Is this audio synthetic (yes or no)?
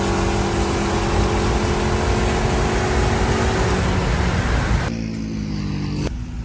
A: no